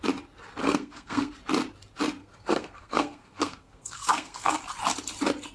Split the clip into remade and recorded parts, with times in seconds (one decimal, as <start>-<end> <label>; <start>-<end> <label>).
0.0-0.6 recorded; 0.6-1.3 remade; 1.3-2.2 recorded; 2.2-4.6 remade; 4.6-5.5 recorded